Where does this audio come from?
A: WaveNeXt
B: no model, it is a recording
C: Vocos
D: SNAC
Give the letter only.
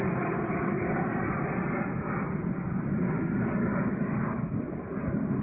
B